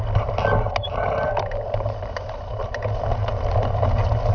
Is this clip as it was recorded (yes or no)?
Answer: yes